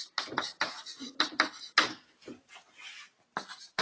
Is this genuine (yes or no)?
yes